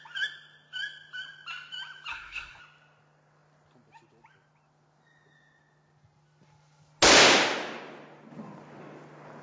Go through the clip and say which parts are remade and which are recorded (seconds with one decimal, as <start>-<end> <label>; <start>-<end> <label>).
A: 0.0-2.1 recorded; 2.1-2.6 remade; 2.6-9.4 recorded